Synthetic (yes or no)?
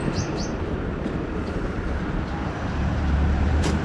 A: yes